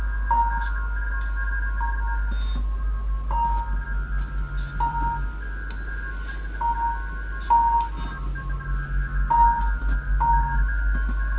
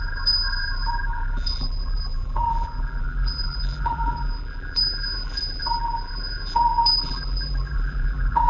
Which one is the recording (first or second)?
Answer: first